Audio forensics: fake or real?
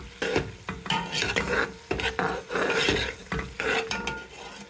real